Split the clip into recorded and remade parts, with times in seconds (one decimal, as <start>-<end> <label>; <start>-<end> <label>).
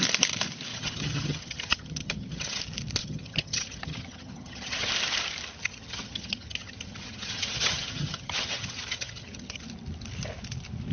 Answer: 0.0-0.7 recorded; 0.7-2.6 remade; 2.6-3.0 recorded; 3.0-4.9 remade; 4.9-5.6 recorded; 5.6-9.6 remade; 9.6-10.9 recorded